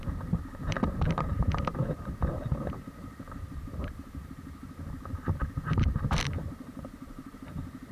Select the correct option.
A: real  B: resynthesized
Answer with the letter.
B